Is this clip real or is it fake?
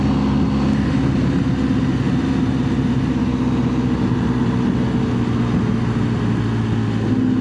real